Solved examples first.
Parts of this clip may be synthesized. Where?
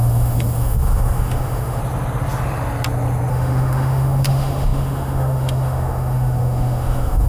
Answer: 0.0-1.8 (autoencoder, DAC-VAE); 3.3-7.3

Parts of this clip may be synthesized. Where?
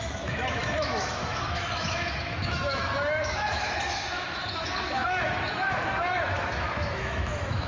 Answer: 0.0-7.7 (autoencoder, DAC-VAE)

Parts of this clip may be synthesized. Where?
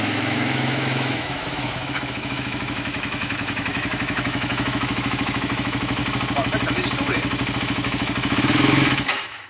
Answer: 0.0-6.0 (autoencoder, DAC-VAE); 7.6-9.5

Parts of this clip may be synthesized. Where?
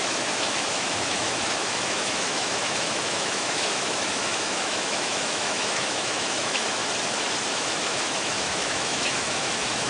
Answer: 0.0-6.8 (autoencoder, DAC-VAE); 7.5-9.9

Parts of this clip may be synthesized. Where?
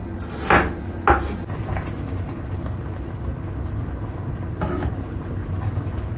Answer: none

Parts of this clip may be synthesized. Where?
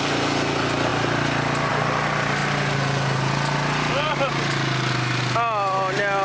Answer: none